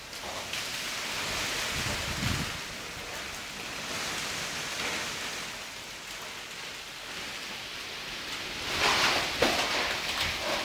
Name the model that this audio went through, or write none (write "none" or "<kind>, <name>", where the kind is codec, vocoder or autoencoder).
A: none